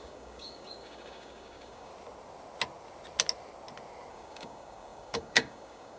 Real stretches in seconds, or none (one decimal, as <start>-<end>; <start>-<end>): 1.9-4.1